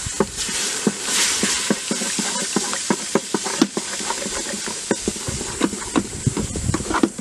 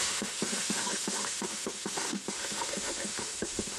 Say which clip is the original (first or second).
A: first